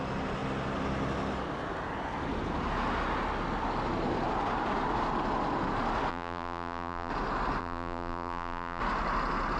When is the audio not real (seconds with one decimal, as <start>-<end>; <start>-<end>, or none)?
6.1-7.1; 7.6-8.8